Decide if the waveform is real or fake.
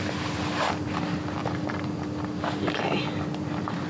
real